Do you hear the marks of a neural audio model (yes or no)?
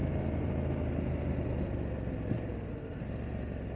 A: no